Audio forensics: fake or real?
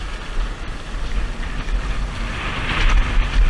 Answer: real